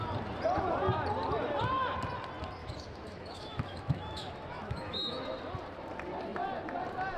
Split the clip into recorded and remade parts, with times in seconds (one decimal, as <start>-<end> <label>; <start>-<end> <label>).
0.0-2.6 recorded; 2.6-5.2 remade; 5.2-7.2 recorded

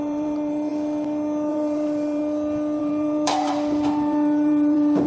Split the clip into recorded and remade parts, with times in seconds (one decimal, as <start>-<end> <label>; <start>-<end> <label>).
0.0-0.7 remade; 0.7-1.5 recorded; 1.5-2.2 remade; 2.2-2.8 recorded; 2.8-5.1 remade